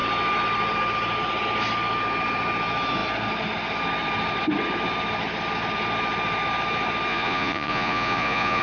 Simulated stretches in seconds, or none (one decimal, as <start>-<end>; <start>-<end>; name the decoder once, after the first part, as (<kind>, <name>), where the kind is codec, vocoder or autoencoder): 7.1-8.6 (vocoder, Vocos)